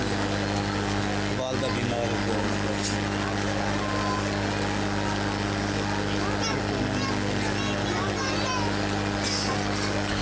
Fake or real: real